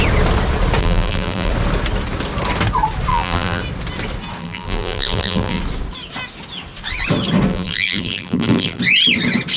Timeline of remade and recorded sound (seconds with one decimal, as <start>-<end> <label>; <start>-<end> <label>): 0.0-0.8 recorded; 0.8-1.5 remade; 1.5-3.1 recorded; 3.1-3.6 remade; 3.6-4.4 recorded; 4.4-5.6 remade; 5.6-7.5 recorded; 7.5-8.8 remade; 8.8-9.6 recorded